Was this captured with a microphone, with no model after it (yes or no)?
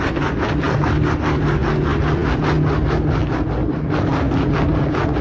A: yes